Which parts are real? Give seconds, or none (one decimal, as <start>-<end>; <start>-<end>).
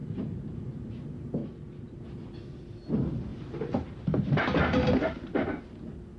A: 0.9-3.3; 4.9-6.2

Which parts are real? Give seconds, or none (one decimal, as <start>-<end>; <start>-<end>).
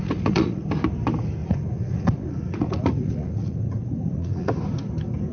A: 0.6-1.4; 4.6-5.3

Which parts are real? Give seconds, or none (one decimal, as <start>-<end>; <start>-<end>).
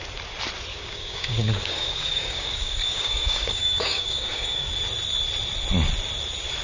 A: 0.0-0.7; 4.7-6.6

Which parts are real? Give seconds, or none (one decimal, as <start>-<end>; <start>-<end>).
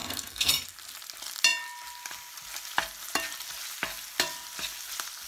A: 0.5-5.3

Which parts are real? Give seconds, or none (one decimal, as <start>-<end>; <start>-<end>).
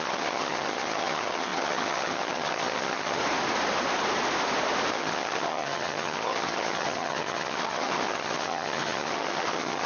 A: 3.2-4.9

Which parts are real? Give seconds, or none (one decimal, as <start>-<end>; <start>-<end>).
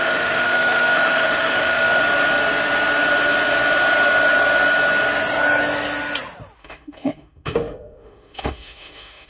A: 2.0-6.6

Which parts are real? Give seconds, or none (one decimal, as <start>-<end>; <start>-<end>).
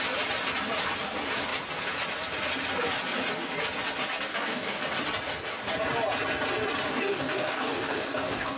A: 0.0-4.3; 4.8-6.9